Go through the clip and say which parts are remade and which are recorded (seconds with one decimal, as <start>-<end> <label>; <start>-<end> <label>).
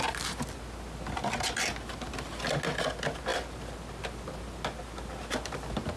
0.0-6.0 recorded